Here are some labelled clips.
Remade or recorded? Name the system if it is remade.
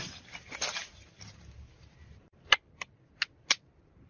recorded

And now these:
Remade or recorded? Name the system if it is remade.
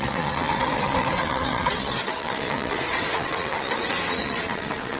remade, vocoder, WaveNeXt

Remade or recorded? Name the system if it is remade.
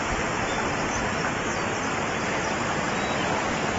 recorded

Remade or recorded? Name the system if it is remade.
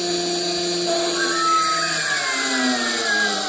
recorded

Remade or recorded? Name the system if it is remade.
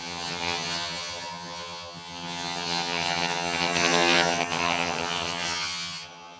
remade, vocoder, HiFi-GAN